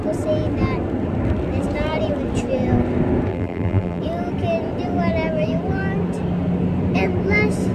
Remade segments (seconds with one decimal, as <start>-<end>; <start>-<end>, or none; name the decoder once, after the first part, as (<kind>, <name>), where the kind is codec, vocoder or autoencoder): 3.3-4.0 (vocoder, BigVGAN v2)